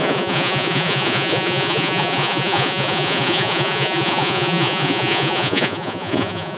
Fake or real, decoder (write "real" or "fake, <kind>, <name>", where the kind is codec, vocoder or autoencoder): fake, vocoder, Vocos